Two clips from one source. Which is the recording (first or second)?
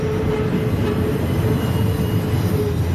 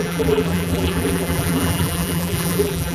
first